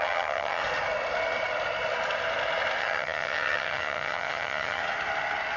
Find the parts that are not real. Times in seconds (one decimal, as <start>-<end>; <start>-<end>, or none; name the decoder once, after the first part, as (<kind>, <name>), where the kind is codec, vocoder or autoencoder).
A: 0.0-0.6 (vocoder, HiFi-GAN); 2.8-4.8